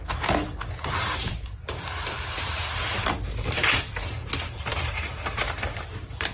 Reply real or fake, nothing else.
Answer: fake